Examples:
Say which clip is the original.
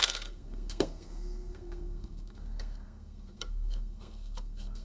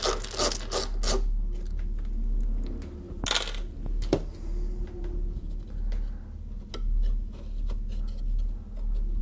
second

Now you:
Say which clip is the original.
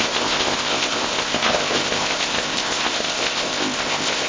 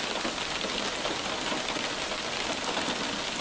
second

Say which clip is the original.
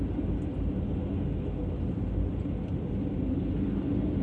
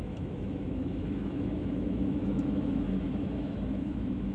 first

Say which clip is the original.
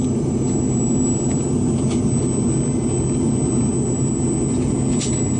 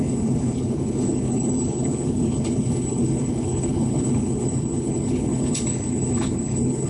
first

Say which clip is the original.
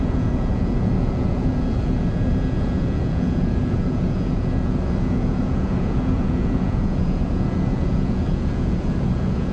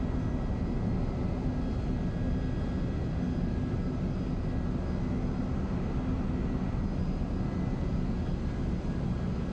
second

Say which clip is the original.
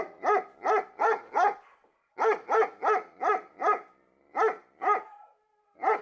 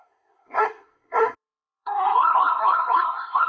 first